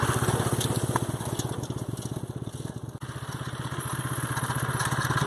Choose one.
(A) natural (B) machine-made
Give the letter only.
A